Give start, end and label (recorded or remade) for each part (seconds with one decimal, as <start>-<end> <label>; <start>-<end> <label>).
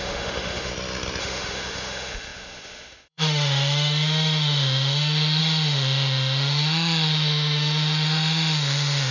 0.0-0.7 remade; 0.7-1.2 recorded; 1.2-9.1 remade